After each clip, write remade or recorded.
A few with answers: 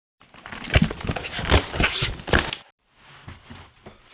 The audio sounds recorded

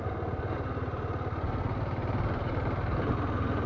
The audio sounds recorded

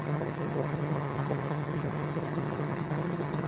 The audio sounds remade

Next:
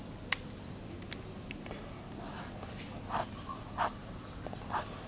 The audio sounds recorded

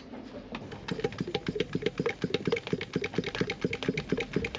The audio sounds recorded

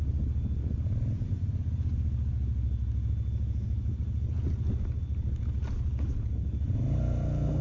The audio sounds recorded